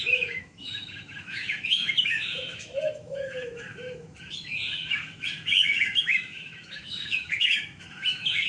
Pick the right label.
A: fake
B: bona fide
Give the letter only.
A